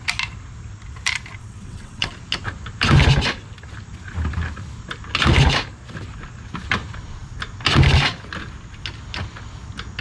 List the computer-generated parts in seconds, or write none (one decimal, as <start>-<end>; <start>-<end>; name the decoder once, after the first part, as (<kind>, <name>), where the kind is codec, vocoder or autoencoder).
1.4-2.1 (vocoder, WaveNeXt)